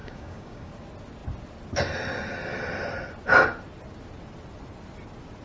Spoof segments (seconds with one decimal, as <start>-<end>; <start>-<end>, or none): 0.0-0.7